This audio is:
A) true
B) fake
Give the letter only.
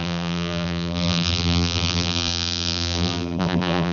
B